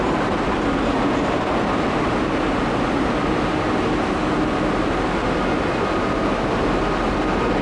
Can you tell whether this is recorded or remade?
recorded